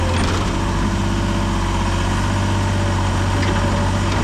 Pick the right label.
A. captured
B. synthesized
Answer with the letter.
A